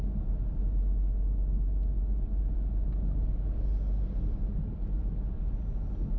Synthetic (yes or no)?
no